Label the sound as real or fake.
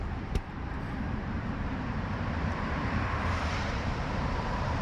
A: fake